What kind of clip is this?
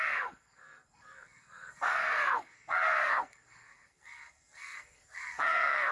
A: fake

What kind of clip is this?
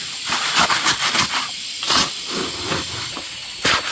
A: real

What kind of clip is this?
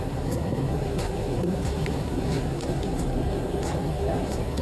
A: fake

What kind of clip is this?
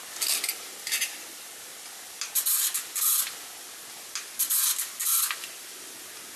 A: real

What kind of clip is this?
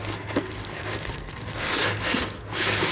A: fake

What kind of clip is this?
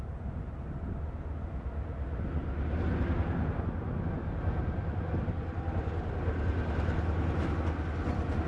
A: real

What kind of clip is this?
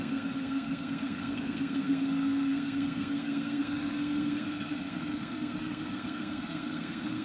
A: fake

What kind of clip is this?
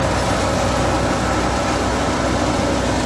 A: real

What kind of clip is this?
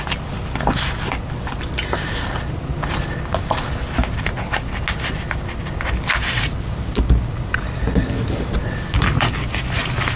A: real